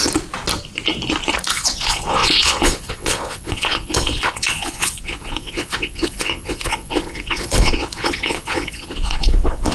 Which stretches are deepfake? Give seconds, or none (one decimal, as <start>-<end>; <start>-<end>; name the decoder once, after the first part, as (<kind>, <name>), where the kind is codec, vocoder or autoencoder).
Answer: 1.5-9.7 (vocoder, Vocos)